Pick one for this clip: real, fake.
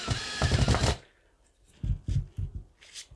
real